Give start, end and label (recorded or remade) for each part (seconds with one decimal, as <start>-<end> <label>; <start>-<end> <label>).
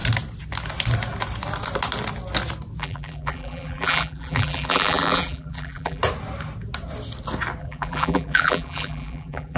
0.0-2.8 recorded; 2.8-6.0 remade; 6.0-7.6 recorded; 7.6-9.6 remade